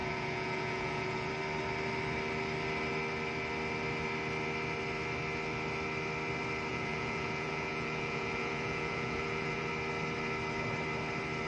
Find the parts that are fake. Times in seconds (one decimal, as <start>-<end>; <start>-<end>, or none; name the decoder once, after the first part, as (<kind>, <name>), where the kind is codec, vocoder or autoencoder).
0.0-1.3 (vocoder, Vocos); 6.7-9.7